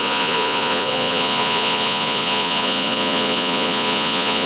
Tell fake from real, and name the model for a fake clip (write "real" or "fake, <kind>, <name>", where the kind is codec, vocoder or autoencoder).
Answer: fake, vocoder, Vocos